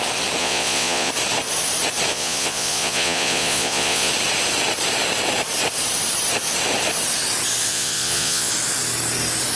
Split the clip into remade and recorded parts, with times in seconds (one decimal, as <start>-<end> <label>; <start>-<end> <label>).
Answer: 0.0-0.4 recorded; 0.4-1.1 remade; 1.1-2.1 recorded; 2.1-4.1 remade; 4.1-7.7 recorded; 7.7-8.5 remade; 8.5-9.6 recorded